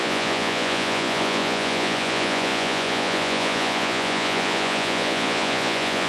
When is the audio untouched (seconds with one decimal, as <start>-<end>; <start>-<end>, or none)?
none